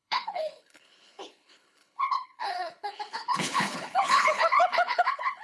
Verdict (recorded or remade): remade